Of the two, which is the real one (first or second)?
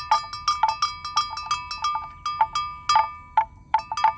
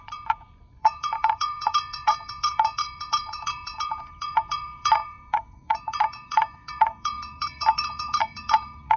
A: first